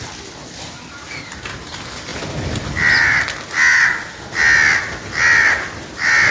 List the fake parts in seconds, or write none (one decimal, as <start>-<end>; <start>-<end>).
none